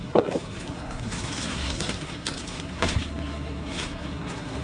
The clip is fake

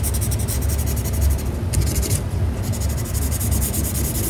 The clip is real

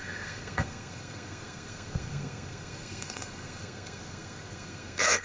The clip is fake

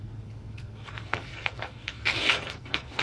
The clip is fake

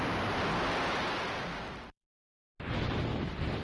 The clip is real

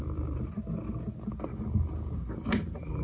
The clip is real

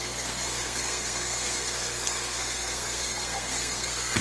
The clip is fake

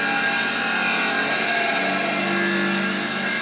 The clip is real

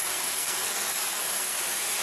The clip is fake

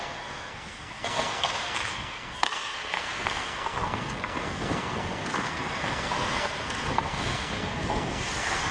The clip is fake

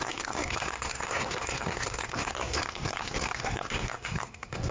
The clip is fake